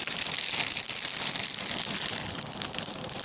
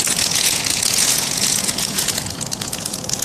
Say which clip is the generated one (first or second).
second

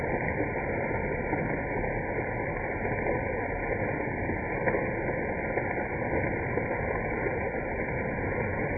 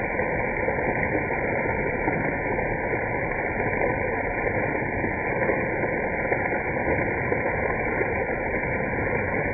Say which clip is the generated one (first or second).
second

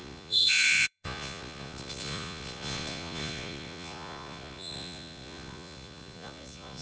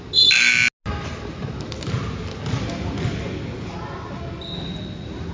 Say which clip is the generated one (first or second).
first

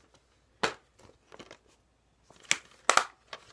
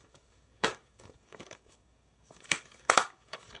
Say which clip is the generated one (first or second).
second